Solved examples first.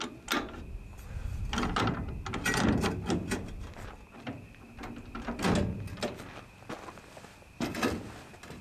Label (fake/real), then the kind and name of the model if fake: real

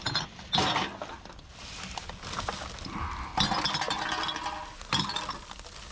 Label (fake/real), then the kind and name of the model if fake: real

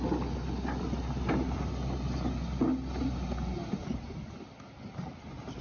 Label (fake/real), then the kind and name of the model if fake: real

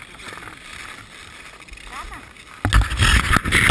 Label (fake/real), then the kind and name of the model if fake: real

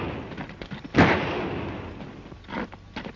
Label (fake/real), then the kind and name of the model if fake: real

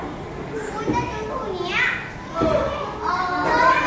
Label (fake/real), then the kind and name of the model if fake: real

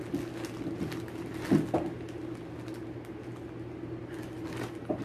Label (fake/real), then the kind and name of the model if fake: real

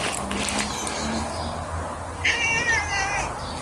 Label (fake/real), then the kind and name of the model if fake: real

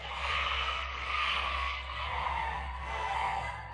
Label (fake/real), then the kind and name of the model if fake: fake, codec, SNAC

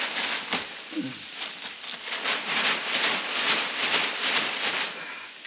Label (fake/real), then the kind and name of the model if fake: real